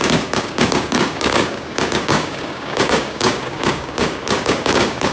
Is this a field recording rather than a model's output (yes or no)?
no